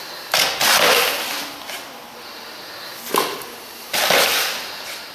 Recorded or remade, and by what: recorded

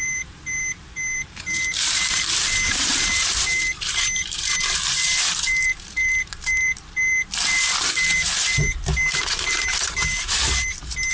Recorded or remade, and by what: remade, vocoder, BigVGAN v2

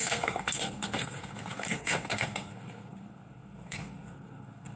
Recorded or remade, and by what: remade, codec, SNAC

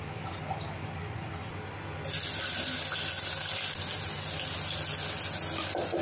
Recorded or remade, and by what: recorded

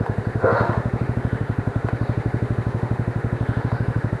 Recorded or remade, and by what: remade, autoencoder, DAC-VAE